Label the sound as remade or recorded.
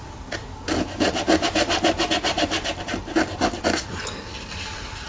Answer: recorded